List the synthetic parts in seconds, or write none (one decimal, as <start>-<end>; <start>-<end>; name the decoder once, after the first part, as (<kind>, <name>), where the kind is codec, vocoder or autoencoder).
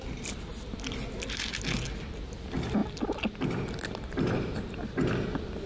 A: none